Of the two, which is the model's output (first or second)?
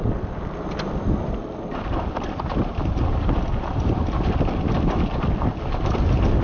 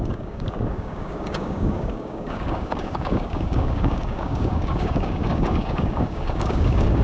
second